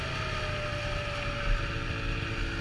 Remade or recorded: recorded